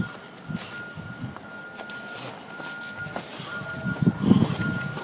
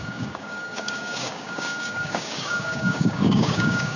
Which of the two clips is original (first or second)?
first